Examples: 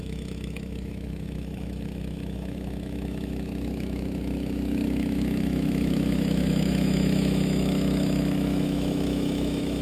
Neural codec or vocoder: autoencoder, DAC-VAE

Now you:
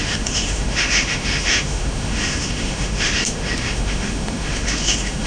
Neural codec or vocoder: autoencoder, DAC-VAE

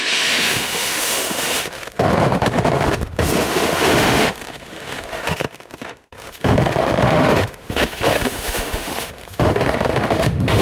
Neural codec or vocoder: autoencoder, DAC-VAE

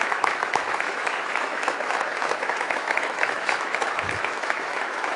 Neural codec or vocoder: autoencoder, DAC-VAE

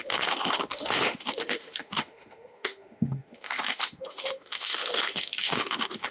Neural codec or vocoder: autoencoder, DAC-VAE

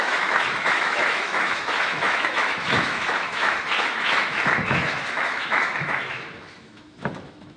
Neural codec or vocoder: autoencoder, DAC-VAE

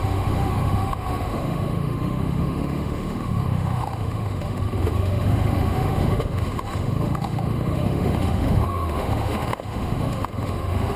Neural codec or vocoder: autoencoder, DAC-VAE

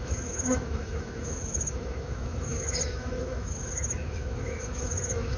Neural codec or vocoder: autoencoder, DAC-VAE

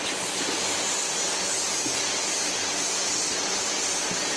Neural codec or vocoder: none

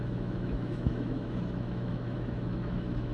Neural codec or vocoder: autoencoder, DAC-VAE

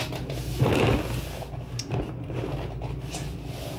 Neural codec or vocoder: none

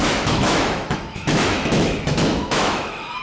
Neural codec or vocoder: autoencoder, DAC-VAE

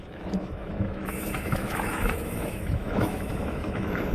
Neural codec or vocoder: autoencoder, DAC-VAE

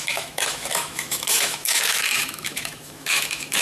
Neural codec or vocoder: autoencoder, DAC-VAE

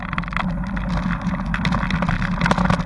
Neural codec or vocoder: none